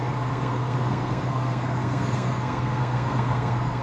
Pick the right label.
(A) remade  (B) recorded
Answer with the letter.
A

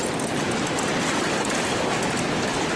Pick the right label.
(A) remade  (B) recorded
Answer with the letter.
B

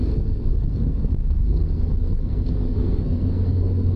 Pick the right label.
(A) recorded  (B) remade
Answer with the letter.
B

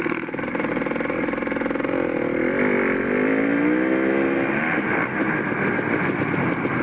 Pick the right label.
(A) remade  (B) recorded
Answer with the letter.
B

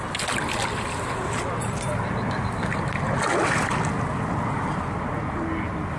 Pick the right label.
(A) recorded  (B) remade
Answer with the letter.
A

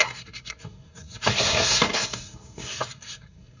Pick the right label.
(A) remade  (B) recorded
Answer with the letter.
A